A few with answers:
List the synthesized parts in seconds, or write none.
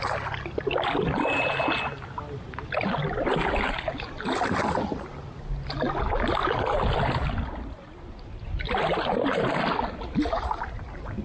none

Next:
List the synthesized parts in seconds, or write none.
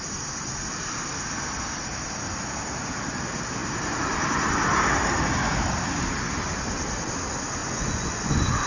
7.6-8.7 (vocoder, Vocos)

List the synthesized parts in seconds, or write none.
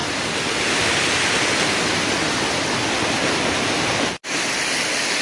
none